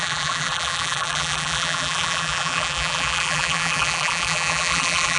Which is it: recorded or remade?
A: remade